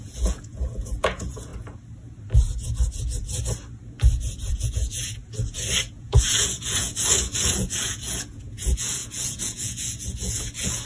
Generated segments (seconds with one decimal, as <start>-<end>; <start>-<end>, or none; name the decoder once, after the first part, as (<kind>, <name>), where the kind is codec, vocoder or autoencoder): 0.0-1.5 (vocoder, Vocos); 4.5-5.2; 5.9-10.9

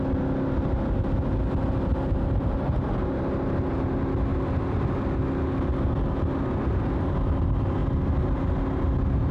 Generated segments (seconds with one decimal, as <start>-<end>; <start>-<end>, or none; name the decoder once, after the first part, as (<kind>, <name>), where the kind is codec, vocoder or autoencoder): 4.3-5.2 (vocoder, BigVGAN v2)